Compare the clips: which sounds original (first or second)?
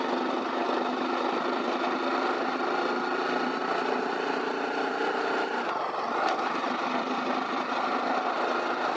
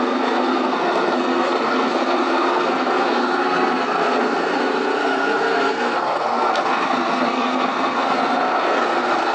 first